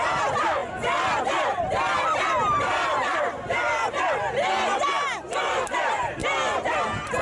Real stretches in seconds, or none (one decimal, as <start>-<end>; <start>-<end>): 0.6-2.6; 3.8-5.4; 6.2-7.2